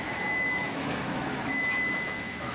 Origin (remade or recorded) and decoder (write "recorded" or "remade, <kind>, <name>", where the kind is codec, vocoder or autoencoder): remade, autoencoder, DAC-VAE